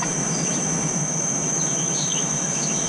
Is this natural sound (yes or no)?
no